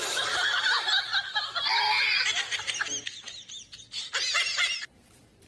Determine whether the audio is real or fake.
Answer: real